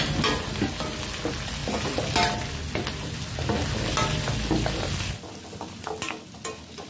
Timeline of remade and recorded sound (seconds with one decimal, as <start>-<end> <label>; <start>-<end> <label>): 0.0-6.9 recorded